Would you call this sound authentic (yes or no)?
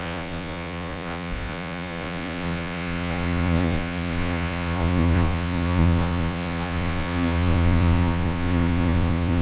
no